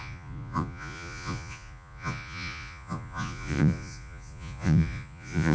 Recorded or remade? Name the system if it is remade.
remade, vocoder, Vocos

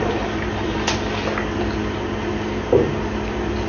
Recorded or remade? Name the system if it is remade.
recorded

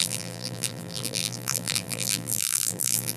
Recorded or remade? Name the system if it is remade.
remade, vocoder, BigVGAN v2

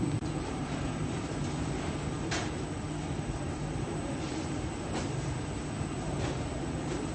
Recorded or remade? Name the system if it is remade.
remade, vocoder, BigVGAN v2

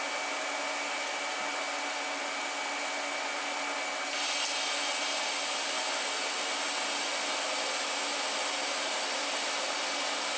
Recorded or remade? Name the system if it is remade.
recorded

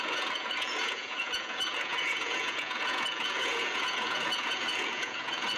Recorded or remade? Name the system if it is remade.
remade, vocoder, Vocos